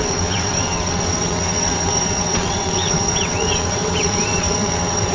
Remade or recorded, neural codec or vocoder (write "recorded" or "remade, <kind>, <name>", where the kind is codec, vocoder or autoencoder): remade, vocoder, WaveNeXt